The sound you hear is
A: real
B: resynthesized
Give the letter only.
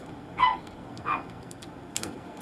B